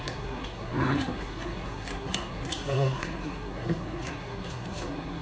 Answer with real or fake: fake